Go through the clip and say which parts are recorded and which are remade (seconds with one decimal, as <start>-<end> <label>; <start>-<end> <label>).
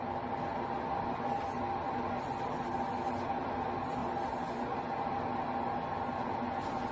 0.0-6.9 recorded